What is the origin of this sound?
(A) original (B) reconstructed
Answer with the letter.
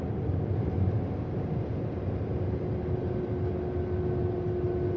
A